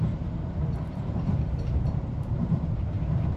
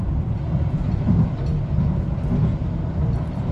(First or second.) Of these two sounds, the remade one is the first